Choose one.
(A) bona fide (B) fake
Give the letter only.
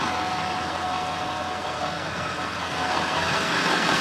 B